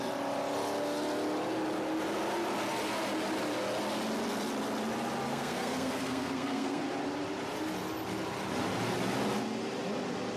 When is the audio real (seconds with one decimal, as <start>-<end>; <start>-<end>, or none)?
0.0-5.3; 6.8-10.4